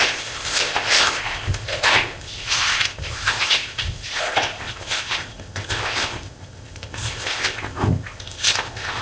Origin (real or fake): fake